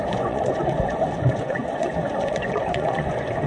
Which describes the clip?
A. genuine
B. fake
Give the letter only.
B